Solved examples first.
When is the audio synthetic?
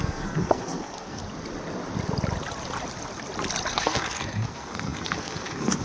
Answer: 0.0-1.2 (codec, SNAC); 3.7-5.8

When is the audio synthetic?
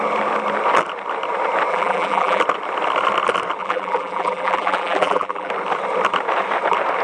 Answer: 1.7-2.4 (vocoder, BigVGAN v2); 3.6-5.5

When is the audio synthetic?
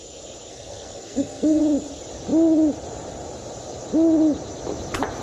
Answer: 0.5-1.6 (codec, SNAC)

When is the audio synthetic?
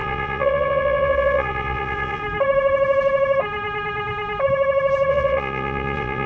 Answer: 0.0-2.2 (vocoder, Vocos); 5.1-6.3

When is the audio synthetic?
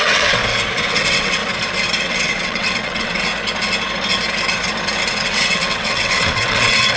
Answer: 0.0-0.4 (vocoder, WaveNeXt); 0.9-1.4; 2.0-3.3; 5.1-7.0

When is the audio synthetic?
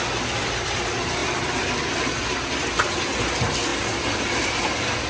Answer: 1.2-2.1 (vocoder, BigVGAN v2); 3.7-4.6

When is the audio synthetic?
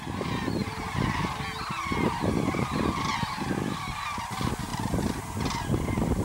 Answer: 4.7-5.2 (vocoder, BigVGAN v2)